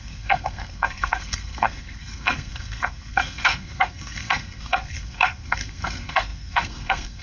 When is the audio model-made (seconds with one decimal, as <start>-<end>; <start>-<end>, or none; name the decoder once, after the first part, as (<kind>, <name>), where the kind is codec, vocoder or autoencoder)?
0.0-7.2 (codec, SNAC)